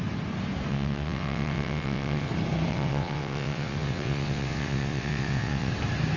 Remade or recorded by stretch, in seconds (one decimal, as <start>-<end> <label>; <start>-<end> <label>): 0.0-0.7 recorded; 0.7-2.3 remade; 2.3-2.7 recorded; 2.7-5.7 remade; 5.7-6.2 recorded